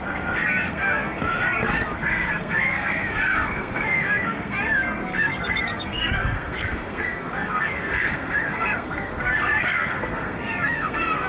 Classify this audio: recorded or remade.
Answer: remade